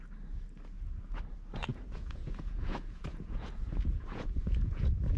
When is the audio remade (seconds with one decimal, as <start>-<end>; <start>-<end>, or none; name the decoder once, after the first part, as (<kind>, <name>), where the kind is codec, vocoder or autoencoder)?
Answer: 1.7-4.8 (vocoder, Vocos)